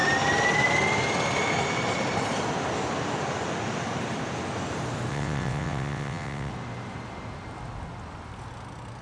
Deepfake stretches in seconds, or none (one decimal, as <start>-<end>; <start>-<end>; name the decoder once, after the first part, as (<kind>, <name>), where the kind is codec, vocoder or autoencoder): 5.1-6.5 (vocoder, WaveNeXt)